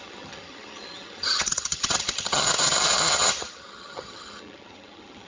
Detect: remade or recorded remade